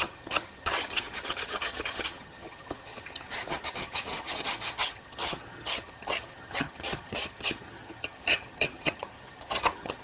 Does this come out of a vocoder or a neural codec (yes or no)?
yes